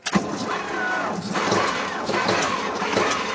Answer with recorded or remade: recorded